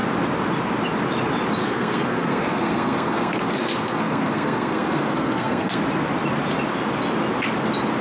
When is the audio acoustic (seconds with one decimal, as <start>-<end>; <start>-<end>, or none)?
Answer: 0.0-1.6; 5.8-8.0